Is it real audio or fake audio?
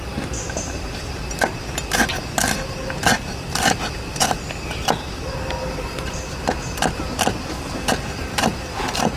real